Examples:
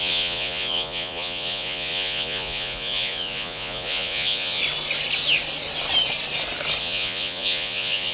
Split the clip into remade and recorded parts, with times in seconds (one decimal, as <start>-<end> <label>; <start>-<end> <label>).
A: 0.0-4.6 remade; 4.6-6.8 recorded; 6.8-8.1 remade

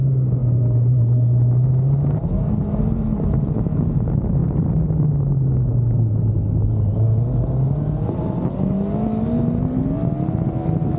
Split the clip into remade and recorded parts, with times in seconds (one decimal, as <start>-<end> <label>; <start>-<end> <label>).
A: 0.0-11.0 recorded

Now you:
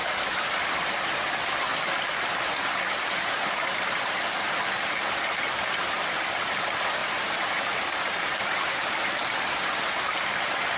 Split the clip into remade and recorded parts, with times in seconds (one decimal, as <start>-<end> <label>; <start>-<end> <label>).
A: 0.0-7.0 recorded; 7.0-8.9 remade; 8.9-10.8 recorded

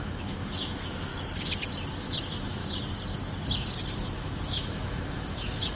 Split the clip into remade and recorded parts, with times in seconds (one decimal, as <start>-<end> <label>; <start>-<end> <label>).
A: 0.0-1.1 remade; 1.1-2.0 recorded; 2.0-2.6 remade; 2.6-4.0 recorded; 4.0-5.8 remade

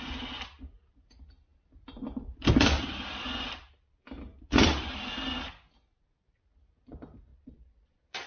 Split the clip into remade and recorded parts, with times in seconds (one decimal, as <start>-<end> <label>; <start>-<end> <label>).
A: 0.0-7.3 recorded; 7.3-8.3 remade

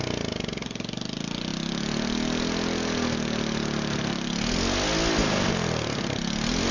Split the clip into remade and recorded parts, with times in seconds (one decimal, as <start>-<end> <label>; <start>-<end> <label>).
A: 0.0-6.7 recorded